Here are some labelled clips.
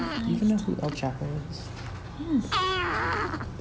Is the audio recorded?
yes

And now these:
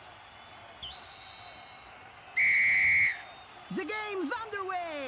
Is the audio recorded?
yes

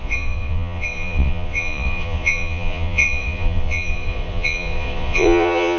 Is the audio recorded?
no